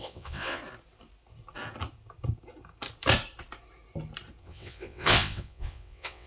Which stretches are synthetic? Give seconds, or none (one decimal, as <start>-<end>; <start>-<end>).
0.0-0.6; 4.4-6.3